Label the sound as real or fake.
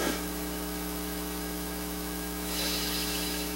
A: fake